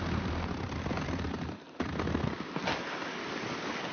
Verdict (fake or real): real